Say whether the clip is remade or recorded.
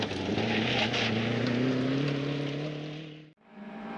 recorded